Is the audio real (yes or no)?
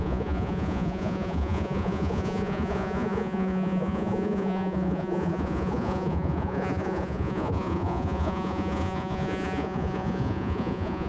no